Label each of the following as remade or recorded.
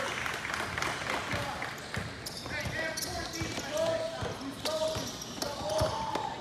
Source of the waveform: recorded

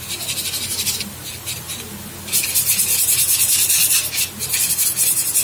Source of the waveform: recorded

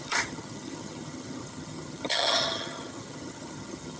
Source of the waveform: remade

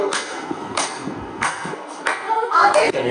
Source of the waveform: remade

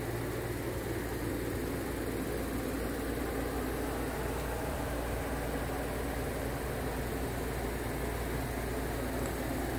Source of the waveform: recorded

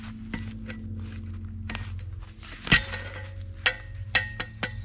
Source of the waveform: recorded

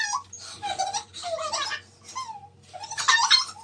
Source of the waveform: recorded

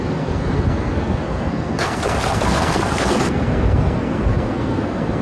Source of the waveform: remade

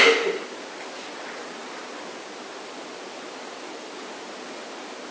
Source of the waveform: recorded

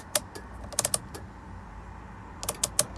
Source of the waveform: recorded